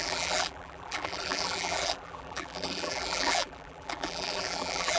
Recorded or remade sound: remade